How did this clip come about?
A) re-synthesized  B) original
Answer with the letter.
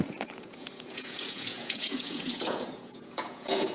A